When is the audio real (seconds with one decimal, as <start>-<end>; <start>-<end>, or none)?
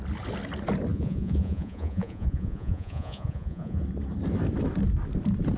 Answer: 0.0-0.9; 3.8-5.6